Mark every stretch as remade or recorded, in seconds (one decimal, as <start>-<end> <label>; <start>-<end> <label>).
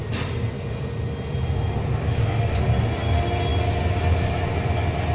0.0-2.4 remade; 2.4-5.1 recorded